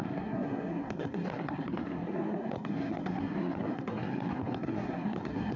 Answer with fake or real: fake